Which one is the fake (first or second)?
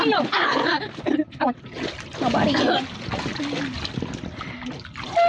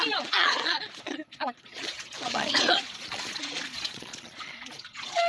second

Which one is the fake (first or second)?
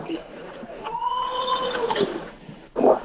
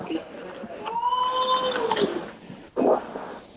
first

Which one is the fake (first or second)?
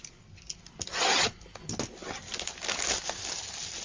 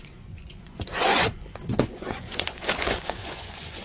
second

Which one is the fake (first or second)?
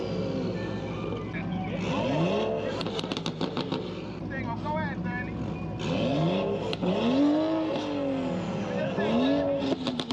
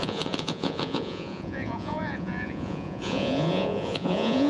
second